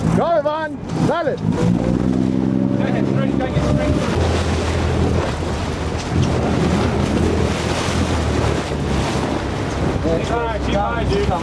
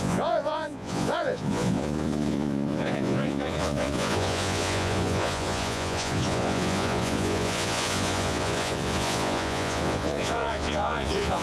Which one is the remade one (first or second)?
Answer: second